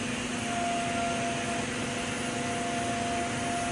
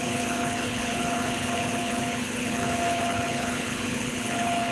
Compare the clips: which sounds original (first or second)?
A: first